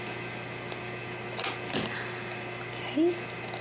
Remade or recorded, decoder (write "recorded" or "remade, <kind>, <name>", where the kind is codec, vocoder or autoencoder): recorded